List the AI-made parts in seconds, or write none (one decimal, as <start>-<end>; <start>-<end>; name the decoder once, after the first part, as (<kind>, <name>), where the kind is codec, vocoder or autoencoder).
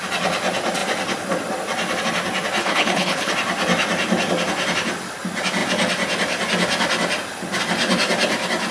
2.6-3.3 (codec, HILCodec)